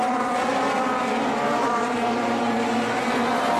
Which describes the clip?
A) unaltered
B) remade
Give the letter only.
B